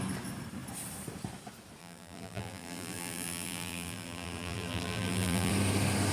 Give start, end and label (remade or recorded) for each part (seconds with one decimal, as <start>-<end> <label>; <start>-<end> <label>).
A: 0.0-1.8 recorded; 1.8-5.5 remade; 5.5-6.1 recorded